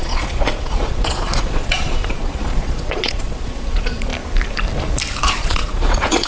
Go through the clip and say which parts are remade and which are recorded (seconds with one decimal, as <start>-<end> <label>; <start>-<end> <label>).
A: 0.0-4.1 remade; 4.1-5.4 recorded; 5.4-6.3 remade